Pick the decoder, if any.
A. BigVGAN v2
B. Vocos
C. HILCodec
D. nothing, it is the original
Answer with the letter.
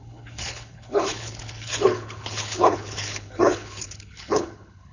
C